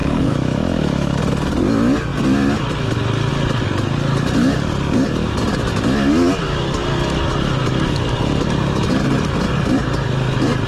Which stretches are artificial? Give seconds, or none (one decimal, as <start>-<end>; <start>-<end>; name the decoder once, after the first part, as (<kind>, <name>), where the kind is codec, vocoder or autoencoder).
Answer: 0.0-1.2 (autoencoder, DAC-VAE)